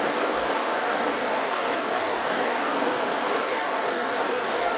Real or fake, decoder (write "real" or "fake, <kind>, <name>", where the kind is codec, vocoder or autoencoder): fake, codec, DAC